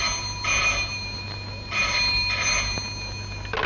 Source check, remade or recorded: recorded